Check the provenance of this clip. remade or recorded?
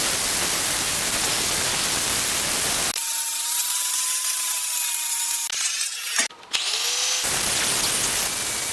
recorded